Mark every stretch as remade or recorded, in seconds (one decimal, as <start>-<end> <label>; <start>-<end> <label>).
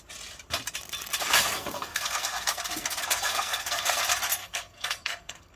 0.0-1.2 recorded; 1.2-4.0 remade; 4.0-4.4 recorded; 4.4-5.6 remade